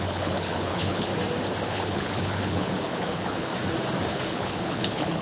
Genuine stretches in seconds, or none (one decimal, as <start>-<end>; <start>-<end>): 1.1-1.7; 3.5-4.1